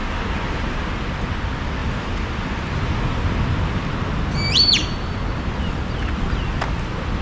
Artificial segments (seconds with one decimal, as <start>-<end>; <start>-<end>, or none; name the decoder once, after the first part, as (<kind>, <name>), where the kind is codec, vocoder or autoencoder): none